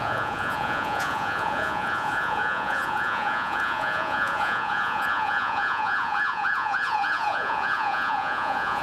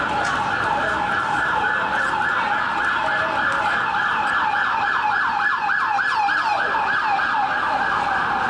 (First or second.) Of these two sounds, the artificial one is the first